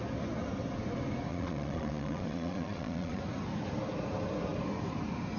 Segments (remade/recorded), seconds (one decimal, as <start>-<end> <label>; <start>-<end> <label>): 0.0-1.3 recorded; 1.3-3.2 remade; 3.2-5.4 recorded